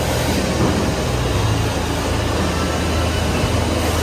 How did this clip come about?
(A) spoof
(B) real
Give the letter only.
B